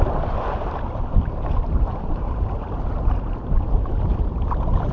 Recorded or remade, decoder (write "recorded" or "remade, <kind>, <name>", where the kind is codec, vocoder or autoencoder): recorded